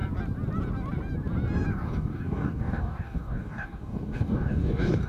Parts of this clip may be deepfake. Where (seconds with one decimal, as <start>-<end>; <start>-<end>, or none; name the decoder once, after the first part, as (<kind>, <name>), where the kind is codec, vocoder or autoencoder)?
1.7-5.1 (codec, DAC)